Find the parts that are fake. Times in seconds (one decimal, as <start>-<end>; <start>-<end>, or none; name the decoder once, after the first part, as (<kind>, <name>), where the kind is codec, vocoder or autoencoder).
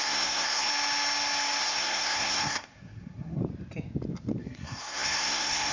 0.0-0.7 (codec, SNAC); 1.6-3.4; 4.4-5.7